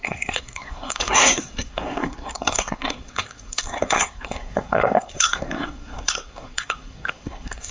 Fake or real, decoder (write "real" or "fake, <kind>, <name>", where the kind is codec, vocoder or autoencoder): fake, codec, SNAC